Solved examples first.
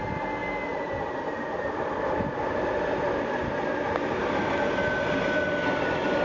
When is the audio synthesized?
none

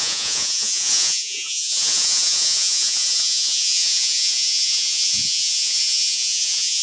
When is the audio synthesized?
0.0-6.8 (vocoder, Vocos)

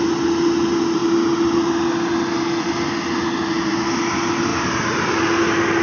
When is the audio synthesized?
4.5-5.2 (vocoder, BigVGAN v2)